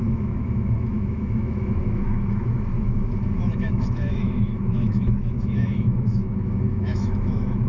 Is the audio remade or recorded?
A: remade